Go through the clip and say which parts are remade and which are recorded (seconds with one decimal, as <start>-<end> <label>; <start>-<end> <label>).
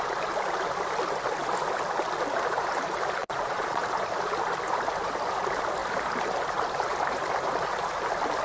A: 0.0-3.2 recorded; 3.2-3.8 remade; 3.8-8.4 recorded